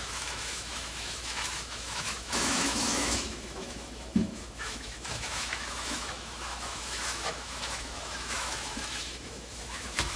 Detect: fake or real fake